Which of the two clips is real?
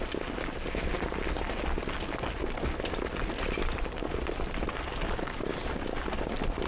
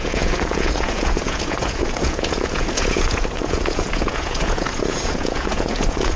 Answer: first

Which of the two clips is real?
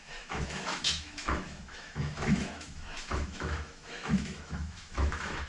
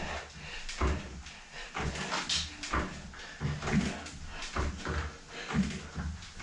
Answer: second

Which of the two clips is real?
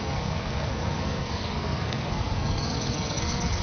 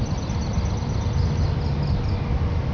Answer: second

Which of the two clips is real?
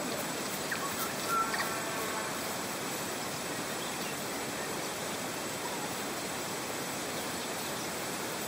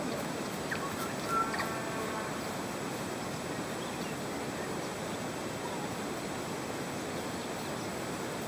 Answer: second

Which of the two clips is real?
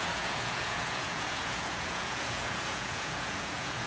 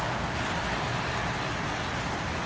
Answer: second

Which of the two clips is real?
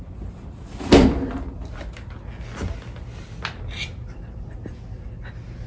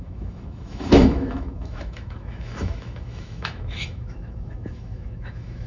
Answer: first